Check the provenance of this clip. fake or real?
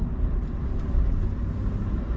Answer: real